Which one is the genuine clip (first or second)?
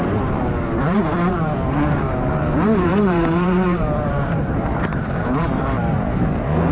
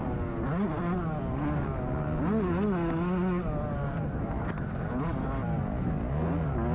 second